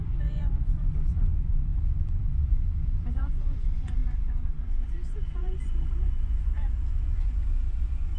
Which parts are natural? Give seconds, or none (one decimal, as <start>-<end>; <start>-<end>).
none